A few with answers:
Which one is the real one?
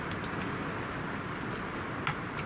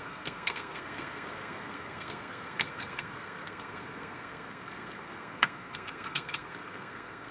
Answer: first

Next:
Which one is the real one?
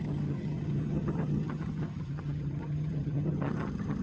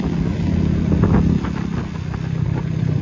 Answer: second